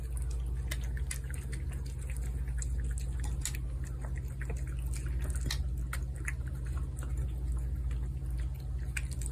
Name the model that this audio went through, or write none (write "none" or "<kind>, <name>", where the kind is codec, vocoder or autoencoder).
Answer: none